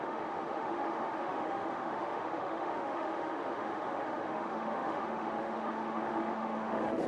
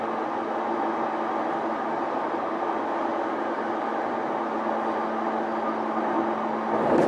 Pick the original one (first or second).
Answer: second